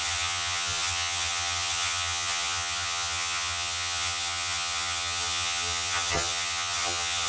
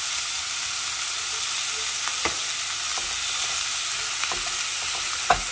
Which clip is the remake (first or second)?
first